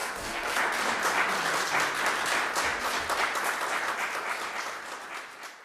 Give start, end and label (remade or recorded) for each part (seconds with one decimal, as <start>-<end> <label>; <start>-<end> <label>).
0.0-0.6 remade; 0.6-5.6 recorded